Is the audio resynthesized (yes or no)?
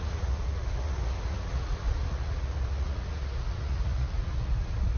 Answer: yes